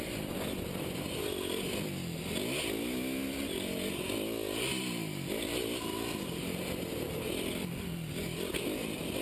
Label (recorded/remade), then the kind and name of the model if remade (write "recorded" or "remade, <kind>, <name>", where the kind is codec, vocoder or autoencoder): recorded